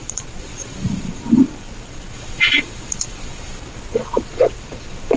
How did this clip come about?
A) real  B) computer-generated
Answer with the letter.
B